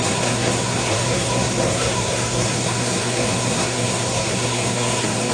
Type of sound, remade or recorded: remade